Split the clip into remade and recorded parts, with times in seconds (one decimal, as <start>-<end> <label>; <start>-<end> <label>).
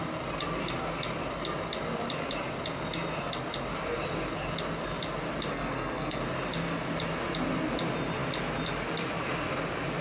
0.0-5.5 recorded; 5.5-6.2 remade; 6.2-10.0 recorded